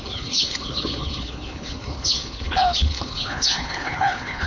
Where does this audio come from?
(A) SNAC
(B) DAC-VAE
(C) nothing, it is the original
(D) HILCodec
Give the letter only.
D